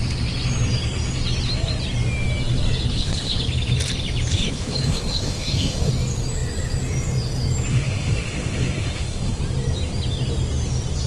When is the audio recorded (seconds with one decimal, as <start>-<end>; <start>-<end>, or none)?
0.0-2.9; 3.4-4.3; 5.9-7.7; 9.4-11.1